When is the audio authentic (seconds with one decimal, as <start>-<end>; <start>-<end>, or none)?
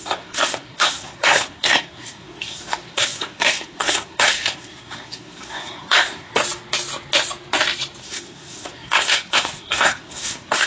6.3-8.0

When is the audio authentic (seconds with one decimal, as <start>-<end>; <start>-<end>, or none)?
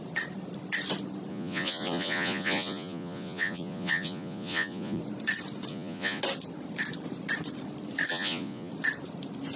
0.0-1.3; 5.0-5.7; 6.2-8.1; 8.7-9.6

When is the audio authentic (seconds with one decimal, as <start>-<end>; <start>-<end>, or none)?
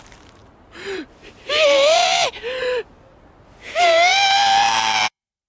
0.4-3.7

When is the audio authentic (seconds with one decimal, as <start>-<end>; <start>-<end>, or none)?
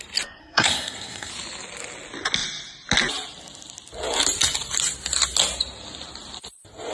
0.0-0.4; 1.3-6.9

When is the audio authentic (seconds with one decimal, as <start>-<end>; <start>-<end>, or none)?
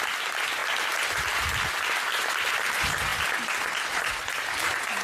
0.0-5.0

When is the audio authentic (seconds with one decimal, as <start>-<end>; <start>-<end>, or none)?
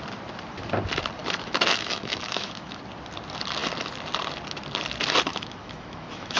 0.0-1.2; 2.8-5.3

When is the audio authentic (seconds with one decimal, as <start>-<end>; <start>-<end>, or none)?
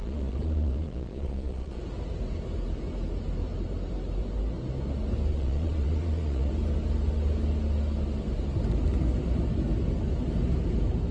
1.8-5.3; 6.5-11.1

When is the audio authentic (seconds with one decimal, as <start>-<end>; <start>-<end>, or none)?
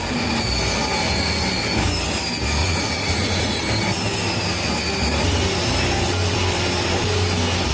0.0-2.6; 3.6-7.7